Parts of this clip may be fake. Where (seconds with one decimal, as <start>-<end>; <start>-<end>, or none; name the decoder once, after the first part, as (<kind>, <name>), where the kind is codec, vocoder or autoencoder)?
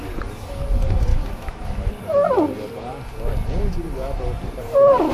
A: 1.1-1.9 (autoencoder, DAC-VAE)